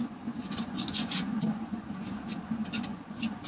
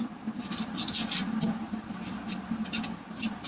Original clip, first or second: second